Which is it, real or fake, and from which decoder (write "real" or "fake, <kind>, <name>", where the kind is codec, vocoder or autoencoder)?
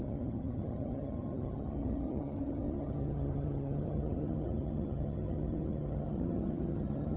fake, vocoder, HiFi-GAN